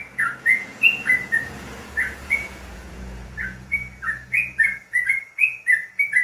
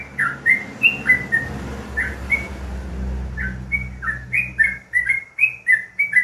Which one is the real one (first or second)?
second